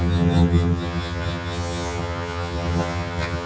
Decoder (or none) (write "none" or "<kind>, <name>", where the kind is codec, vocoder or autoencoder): vocoder, HiFi-GAN